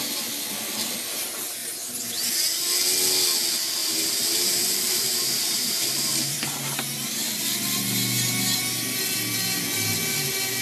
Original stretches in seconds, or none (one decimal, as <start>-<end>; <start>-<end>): 0.0-1.6; 2.3-3.8; 7.3-10.6